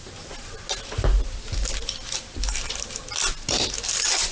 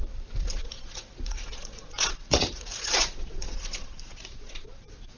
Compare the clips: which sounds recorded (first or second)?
first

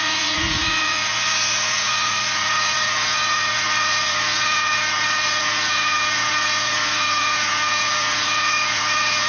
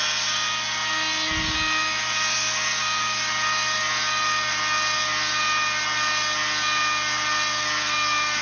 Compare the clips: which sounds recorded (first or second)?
second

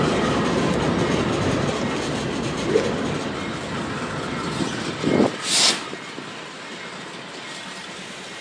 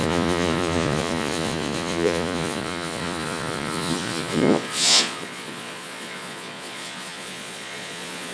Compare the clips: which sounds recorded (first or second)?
first